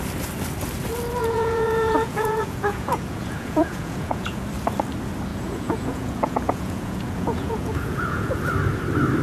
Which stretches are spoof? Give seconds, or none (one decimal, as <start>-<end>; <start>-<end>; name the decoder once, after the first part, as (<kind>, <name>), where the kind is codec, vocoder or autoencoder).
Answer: 1.2-4.4 (vocoder, Vocos); 5.3-8.4